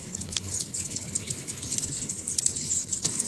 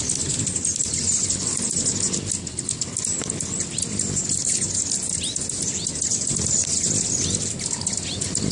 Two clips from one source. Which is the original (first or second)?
second